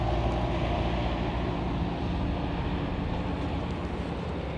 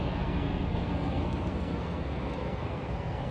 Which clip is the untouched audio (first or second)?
first